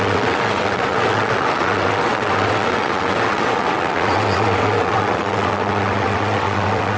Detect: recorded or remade remade